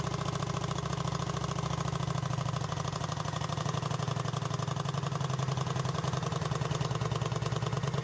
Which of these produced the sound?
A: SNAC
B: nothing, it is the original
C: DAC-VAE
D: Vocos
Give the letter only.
B